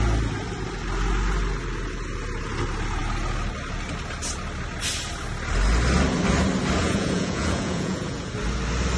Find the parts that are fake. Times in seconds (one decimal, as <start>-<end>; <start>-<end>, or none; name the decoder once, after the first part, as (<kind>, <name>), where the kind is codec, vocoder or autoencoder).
6.8-8.3 (vocoder, Vocos)